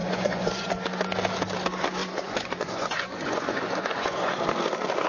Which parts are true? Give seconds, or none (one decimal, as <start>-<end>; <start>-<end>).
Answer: 0.7-2.0; 4.4-5.1